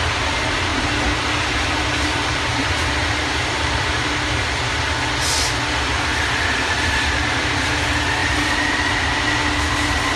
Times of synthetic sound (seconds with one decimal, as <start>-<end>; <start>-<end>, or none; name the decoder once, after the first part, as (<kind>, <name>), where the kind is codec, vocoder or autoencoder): 0.7-4.1 (vocoder, BigVGAN v2); 8.2-8.8